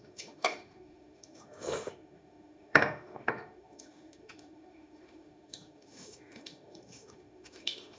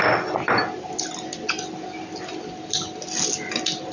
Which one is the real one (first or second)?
second